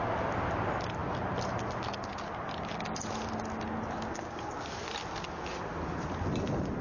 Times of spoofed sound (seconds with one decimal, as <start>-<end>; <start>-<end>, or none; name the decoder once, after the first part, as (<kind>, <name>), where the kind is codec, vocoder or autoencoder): none